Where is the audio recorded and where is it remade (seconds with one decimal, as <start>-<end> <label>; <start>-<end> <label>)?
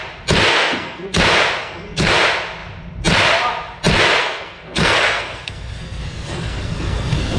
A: 0.0-0.5 recorded; 0.5-1.2 remade; 1.2-1.6 recorded; 1.6-2.1 remade; 2.1-4.2 recorded; 4.2-7.4 remade